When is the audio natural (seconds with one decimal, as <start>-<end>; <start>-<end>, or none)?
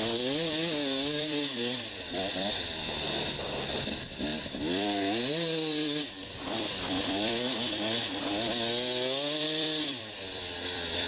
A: none